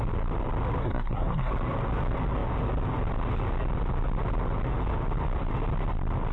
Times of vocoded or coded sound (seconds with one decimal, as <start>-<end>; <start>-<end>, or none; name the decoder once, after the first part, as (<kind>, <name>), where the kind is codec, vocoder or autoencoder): 0.8-1.5 (codec, SNAC)